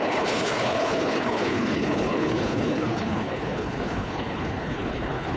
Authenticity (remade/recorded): remade